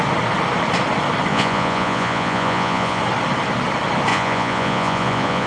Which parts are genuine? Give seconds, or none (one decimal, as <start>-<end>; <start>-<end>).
0.0-1.3; 3.0-4.1